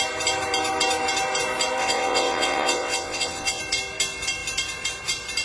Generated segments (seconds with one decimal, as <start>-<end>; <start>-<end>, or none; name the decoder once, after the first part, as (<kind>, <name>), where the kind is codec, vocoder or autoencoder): 1.8-3.6 (vocoder, WaveNeXt)